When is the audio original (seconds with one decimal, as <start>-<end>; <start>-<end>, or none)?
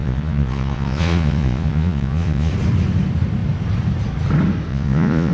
2.5-4.7